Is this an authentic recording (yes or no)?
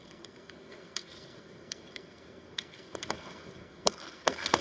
no